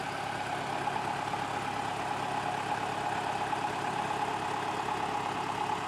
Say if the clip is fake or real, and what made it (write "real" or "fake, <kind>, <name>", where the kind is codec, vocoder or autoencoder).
real